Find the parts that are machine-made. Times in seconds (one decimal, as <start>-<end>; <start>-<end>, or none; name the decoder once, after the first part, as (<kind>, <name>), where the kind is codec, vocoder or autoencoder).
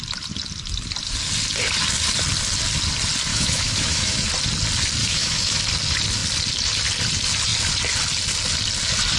3.3-4.3 (autoencoder, DAC-VAE); 5.0-5.6